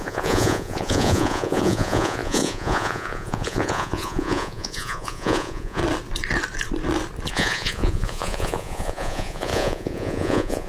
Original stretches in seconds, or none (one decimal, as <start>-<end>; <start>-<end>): 5.8-7.3